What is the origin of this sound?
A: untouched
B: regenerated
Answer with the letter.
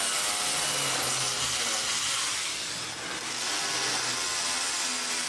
A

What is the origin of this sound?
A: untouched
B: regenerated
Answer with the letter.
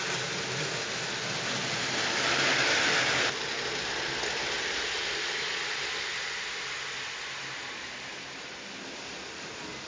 A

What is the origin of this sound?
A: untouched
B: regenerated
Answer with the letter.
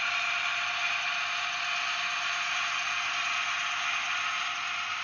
A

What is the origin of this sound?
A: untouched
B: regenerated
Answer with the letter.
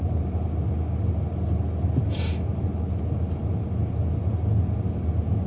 A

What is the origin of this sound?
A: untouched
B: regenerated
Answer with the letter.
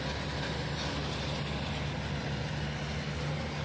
A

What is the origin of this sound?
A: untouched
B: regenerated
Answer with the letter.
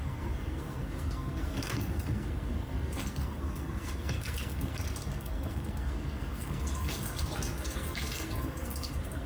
B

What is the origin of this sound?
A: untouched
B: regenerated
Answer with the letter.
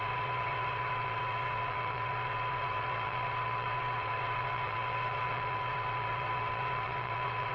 B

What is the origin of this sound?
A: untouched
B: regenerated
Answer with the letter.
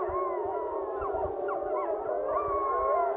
A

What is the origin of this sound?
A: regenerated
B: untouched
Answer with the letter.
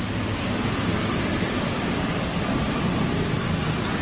B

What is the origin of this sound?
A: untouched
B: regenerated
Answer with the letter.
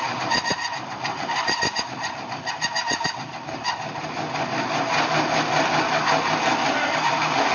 A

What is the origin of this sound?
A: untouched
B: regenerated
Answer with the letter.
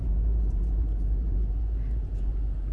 B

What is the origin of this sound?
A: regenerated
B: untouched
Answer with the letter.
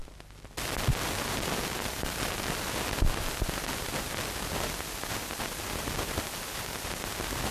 B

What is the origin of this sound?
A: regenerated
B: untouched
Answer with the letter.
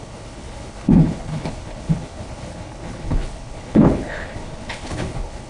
A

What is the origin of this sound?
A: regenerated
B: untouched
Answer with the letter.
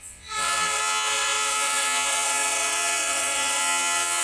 A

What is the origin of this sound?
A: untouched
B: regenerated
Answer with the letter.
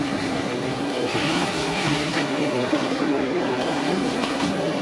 B